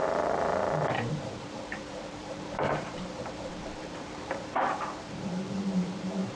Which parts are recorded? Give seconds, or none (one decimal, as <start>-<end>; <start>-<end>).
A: none